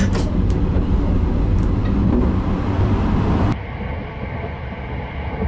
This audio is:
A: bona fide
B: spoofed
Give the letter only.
A